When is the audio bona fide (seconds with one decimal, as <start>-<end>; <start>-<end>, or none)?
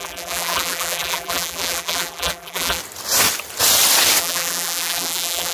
2.8-4.2